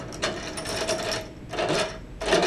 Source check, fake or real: real